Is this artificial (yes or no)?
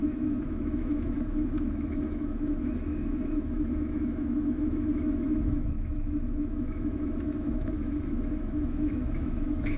yes